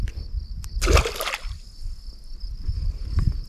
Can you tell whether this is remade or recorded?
recorded